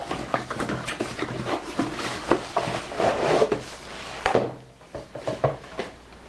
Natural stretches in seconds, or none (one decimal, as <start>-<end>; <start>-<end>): 0.9-1.9; 2.5-4.3; 5.2-6.3